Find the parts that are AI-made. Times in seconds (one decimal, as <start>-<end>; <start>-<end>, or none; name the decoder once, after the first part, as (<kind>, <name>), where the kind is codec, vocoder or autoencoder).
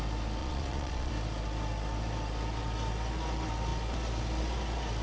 0.4-1.1 (vocoder, Vocos)